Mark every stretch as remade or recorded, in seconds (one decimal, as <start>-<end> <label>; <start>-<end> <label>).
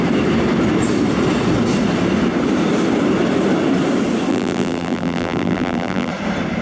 0.0-4.3 recorded; 4.3-6.1 remade; 6.1-6.6 recorded